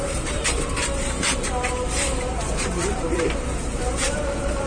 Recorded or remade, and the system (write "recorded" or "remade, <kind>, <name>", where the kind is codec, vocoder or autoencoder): remade, vocoder, BigVGAN v2